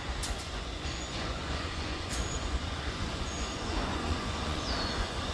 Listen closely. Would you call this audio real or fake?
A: fake